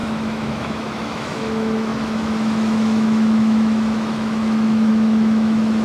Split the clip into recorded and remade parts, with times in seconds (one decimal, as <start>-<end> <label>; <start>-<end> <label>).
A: 0.0-5.8 remade